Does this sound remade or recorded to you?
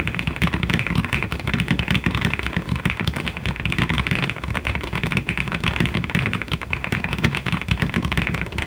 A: remade